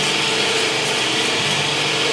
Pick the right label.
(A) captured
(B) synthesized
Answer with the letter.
A